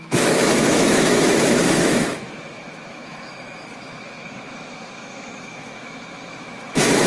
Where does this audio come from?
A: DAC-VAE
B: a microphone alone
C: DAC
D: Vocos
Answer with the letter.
A